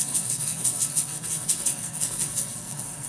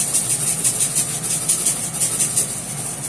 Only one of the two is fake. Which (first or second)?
first